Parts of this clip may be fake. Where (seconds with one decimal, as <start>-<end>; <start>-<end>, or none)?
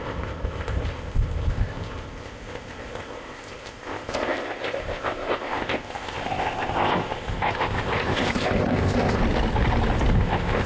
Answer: 0.0-9.2; 10.1-10.7